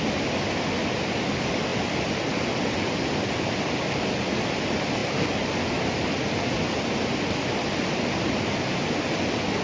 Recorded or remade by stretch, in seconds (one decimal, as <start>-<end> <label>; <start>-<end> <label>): 0.0-9.6 recorded